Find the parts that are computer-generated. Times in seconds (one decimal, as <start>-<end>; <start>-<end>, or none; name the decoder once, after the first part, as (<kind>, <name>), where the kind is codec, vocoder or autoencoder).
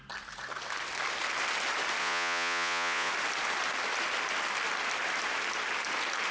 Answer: 2.0-3.1 (vocoder, Vocos)